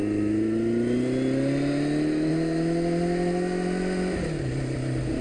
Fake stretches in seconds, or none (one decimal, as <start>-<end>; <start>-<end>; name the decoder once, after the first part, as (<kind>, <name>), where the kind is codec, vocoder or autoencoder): none

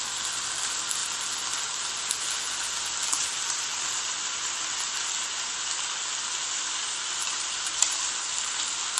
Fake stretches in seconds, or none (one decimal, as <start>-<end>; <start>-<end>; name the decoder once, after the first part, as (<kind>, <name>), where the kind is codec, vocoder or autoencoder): 3.2-3.9 (vocoder, BigVGAN v2); 7.2-8.0

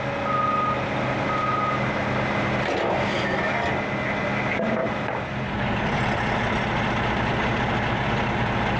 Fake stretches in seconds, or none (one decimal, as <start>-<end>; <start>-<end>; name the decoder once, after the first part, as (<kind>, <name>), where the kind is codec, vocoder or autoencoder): 4.8-5.6 (vocoder, BigVGAN v2)

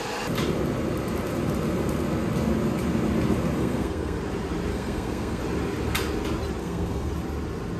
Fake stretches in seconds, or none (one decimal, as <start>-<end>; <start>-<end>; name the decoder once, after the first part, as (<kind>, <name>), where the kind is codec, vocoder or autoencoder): 3.6-4.2 (codec, SNAC); 4.7-5.4; 6.6-7.1

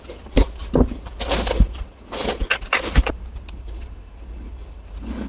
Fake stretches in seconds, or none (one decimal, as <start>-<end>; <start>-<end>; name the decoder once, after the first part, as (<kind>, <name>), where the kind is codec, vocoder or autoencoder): none

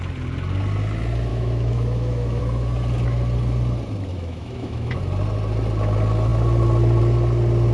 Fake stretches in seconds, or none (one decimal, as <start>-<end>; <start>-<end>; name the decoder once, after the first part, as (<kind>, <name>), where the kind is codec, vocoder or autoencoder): 1.3-2.4 (autoencoder, DAC-VAE); 4.1-5.0

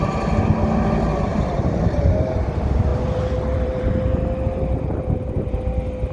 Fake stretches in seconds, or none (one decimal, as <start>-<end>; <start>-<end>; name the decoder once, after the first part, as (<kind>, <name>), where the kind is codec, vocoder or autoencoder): 1.3-2.1 (vocoder, BigVGAN v2); 2.9-3.9

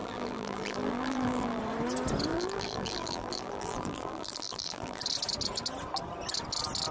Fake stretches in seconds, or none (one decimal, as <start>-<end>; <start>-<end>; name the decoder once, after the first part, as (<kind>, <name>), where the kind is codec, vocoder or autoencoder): 0.0-1.6 (vocoder, BigVGAN v2); 2.3-5.0